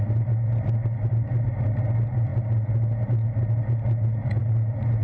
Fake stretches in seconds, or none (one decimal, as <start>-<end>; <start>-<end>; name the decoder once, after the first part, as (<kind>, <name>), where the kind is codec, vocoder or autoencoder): none